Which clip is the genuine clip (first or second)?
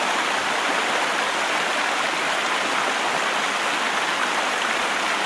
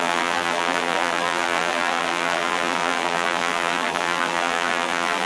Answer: first